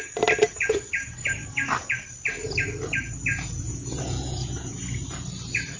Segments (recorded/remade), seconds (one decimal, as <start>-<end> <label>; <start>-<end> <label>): 0.0-3.3 recorded; 3.3-4.8 remade; 4.8-5.8 recorded